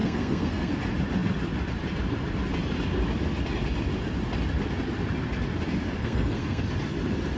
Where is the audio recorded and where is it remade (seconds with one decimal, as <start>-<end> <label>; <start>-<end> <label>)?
0.0-0.7 remade; 0.7-6.0 recorded; 6.0-6.6 remade; 6.6-7.4 recorded